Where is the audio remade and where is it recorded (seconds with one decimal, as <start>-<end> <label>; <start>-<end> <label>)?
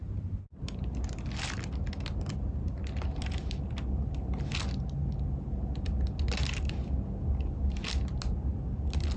0.0-9.2 recorded